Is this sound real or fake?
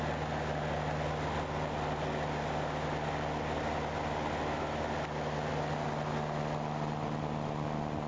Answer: real